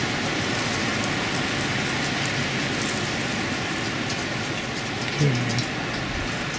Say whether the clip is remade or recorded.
recorded